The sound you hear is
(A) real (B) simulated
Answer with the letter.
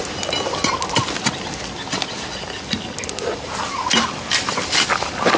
A